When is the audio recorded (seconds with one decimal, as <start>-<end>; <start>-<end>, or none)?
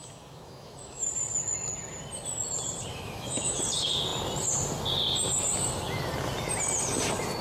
1.1-2.9; 3.6-7.4